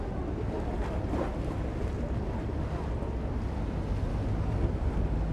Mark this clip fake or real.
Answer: real